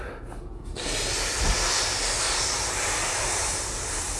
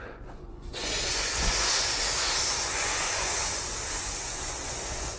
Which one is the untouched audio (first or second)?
first